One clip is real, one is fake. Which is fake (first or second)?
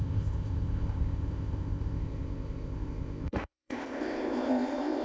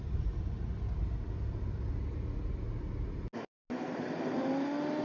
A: first